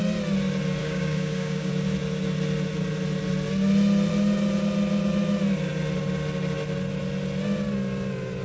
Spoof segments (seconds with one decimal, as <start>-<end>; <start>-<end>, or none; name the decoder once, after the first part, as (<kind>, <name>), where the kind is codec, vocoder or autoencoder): 0.8-1.7 (codec, DAC)

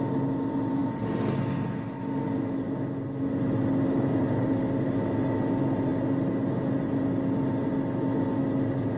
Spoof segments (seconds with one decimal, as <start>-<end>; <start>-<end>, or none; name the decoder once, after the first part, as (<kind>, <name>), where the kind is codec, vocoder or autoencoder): none

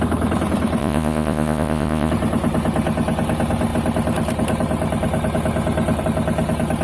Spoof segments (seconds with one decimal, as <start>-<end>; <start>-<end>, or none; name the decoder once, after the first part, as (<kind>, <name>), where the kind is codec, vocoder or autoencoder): 0.8-2.1 (vocoder, Vocos)

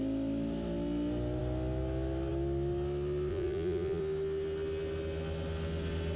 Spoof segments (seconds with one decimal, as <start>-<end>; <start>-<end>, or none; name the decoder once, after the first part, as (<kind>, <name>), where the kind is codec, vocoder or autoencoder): 3.3-4.0 (vocoder, Vocos)

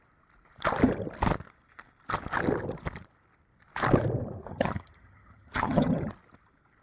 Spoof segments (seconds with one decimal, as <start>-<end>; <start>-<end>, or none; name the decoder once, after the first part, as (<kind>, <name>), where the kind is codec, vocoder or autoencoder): 4.5-6.1 (vocoder, HiFi-GAN)

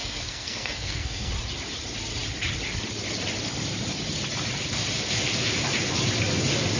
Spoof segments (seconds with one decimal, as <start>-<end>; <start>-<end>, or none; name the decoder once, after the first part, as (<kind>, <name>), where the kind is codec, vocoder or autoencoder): 0.0-1.3 (codec, SNAC)